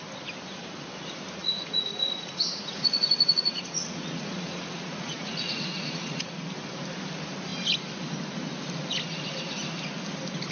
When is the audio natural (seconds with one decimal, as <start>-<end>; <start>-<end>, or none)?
0.0-1.4; 6.3-10.5